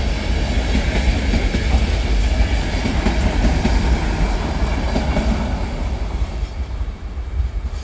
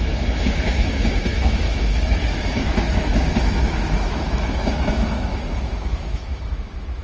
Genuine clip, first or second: first